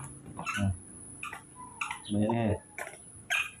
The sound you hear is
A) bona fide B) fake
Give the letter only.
A